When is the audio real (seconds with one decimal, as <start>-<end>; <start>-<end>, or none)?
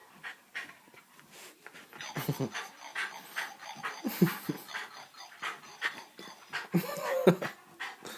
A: 1.6-2.9; 7.4-8.2